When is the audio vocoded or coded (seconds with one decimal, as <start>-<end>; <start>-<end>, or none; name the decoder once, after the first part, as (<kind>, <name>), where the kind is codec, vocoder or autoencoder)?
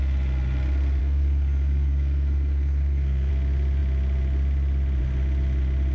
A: 1.0-3.3 (codec, SNAC)